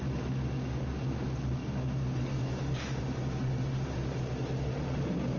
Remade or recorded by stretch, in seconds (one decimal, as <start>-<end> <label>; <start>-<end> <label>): 0.0-5.4 recorded